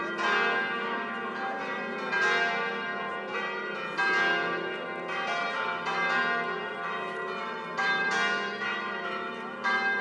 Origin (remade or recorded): recorded